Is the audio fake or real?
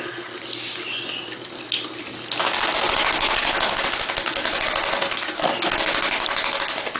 real